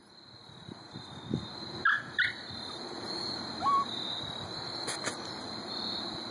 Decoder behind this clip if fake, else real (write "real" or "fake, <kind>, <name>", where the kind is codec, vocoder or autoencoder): real